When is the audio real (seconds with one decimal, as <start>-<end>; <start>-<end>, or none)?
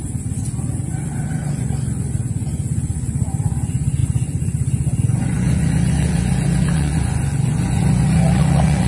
0.9-1.4